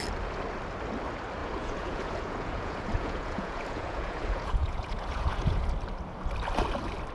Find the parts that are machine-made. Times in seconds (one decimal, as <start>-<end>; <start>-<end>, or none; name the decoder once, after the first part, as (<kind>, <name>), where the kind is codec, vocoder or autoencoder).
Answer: 1.4-5.7 (vocoder, Vocos)